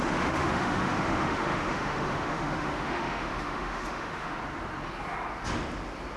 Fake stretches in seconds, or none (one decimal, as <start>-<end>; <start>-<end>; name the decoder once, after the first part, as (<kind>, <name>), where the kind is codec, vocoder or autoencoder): 0.0-4.4 (autoencoder, DAC-VAE)